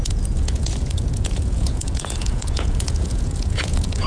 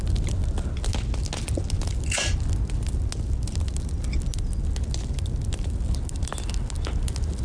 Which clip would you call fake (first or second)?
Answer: first